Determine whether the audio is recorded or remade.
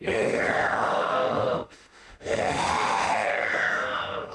remade